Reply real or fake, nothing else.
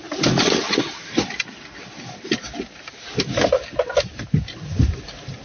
real